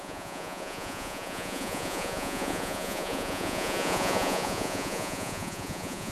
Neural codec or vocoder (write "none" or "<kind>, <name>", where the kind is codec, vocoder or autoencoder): vocoder, Vocos